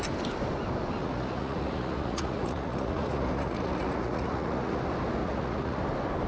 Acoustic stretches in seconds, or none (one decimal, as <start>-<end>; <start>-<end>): 0.0-1.0; 4.8-5.2; 5.8-6.3

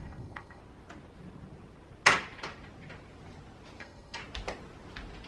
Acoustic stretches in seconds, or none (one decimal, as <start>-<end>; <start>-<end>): 0.6-3.8; 4.2-5.3

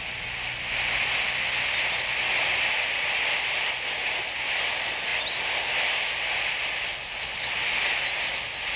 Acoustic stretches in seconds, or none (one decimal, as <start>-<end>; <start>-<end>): 0.0-8.8

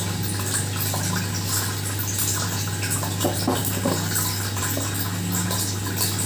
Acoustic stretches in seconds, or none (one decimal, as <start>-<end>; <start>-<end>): 0.0-3.6; 4.6-6.3

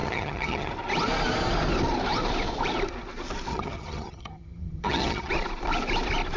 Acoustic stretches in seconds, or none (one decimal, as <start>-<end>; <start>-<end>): 0.7-3.5; 5.3-6.4

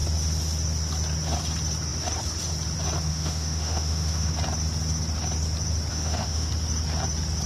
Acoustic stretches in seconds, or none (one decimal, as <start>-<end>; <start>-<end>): 0.0-3.1; 4.3-5.9; 6.5-7.5